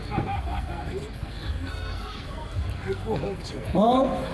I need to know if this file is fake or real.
fake